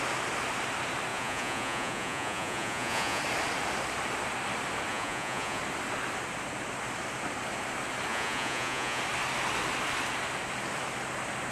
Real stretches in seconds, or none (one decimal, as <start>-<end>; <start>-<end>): 0.0-1.1; 3.2-4.9; 5.6-8.1; 9.0-11.5

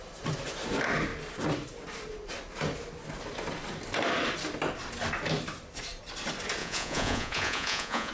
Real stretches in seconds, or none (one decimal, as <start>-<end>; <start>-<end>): 0.0-6.6

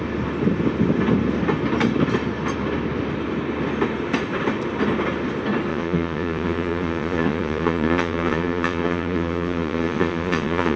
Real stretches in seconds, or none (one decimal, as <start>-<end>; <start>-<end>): 0.0-5.7